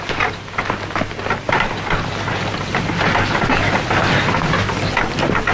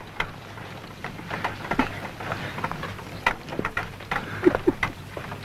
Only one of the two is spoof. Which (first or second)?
second